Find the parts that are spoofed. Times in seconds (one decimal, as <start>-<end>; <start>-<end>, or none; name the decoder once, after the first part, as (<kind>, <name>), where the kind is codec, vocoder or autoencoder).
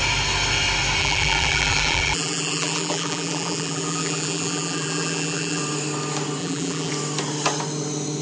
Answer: 1.0-5.6 (vocoder, BigVGAN v2); 6.4-6.9